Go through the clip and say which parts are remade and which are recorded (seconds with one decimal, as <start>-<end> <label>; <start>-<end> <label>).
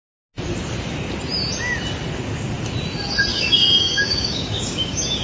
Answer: 0.0-3.3 recorded; 3.3-5.2 remade